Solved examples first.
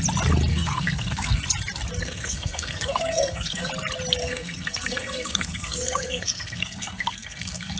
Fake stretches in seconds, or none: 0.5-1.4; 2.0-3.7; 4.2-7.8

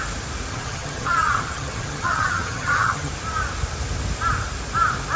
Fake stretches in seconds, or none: 0.5-3.1

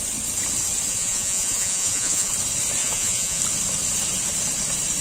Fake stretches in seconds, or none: 0.9-2.3; 2.8-3.4